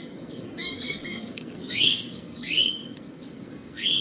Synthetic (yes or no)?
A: yes